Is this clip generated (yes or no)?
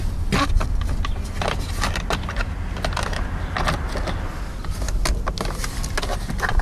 no